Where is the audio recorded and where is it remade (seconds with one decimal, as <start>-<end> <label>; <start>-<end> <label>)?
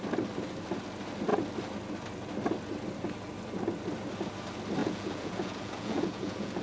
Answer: 0.0-4.8 recorded; 4.8-6.6 remade